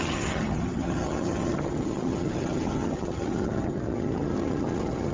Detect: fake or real fake